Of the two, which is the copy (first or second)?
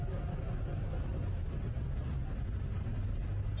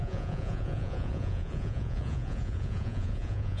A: second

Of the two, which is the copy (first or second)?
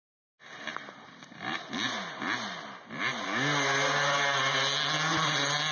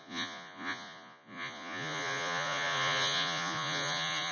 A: second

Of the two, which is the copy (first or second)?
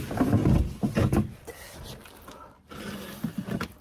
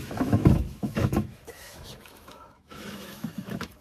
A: second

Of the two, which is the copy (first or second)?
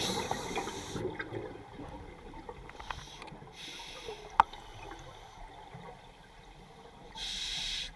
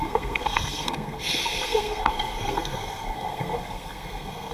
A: second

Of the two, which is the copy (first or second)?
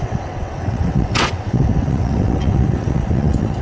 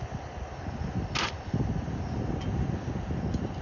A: first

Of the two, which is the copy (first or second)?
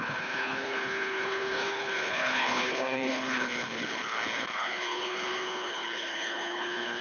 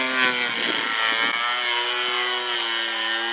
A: first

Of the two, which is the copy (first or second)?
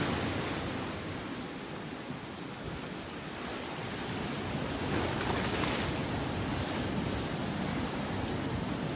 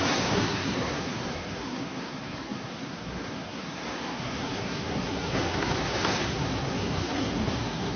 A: second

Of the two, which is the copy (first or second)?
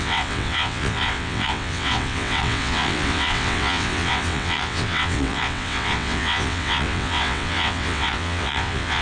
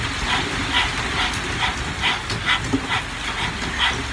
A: first